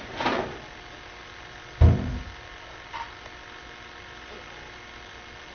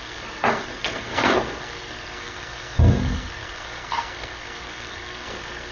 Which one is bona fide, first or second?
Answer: first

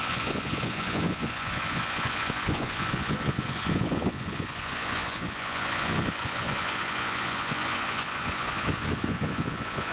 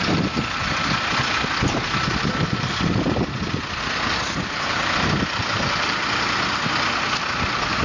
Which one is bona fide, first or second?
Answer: second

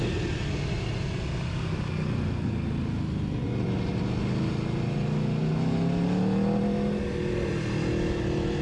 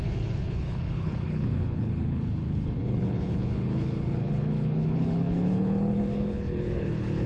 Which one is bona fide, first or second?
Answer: first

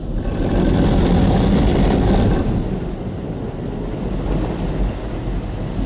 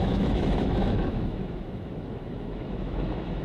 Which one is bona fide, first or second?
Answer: first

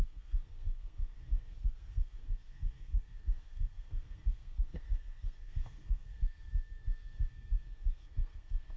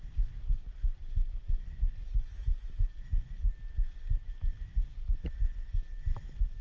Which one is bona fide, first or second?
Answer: second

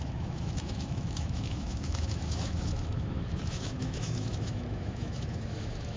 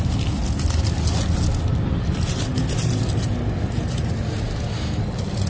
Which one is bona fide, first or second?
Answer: second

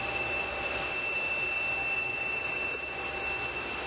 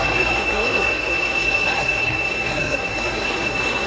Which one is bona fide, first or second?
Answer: first